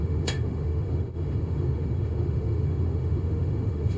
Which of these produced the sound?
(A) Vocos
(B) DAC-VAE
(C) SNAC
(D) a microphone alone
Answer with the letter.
B